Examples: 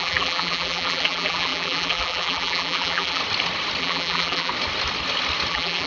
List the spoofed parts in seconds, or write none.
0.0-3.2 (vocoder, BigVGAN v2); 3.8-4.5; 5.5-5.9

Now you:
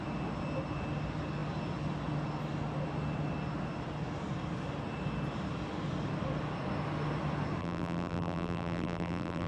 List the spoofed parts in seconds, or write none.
7.6-9.5 (vocoder, BigVGAN v2)